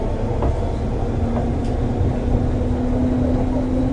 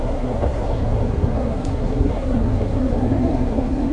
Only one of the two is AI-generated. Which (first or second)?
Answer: second